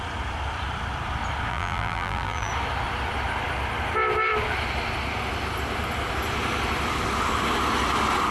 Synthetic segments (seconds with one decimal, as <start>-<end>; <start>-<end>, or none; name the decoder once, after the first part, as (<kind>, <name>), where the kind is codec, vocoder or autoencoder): 1.5-2.5 (vocoder, BigVGAN v2)